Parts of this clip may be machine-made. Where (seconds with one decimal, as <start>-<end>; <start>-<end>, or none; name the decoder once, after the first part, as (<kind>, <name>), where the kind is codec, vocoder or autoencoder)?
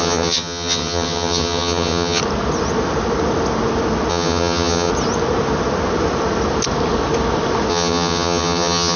0.0-2.2 (vocoder, HiFi-GAN); 4.1-4.9; 7.7-9.0